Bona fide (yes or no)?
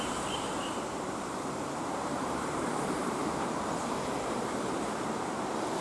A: no